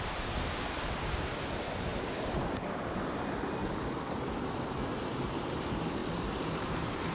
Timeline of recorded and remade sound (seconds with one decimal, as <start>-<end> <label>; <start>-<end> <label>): 0.0-1.9 recorded; 1.9-2.9 remade; 2.9-6.0 recorded; 6.0-7.1 remade